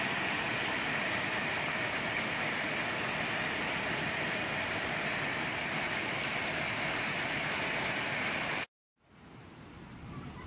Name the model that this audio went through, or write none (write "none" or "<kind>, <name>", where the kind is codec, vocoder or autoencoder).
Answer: none